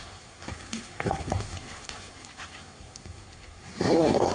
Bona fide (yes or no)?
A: no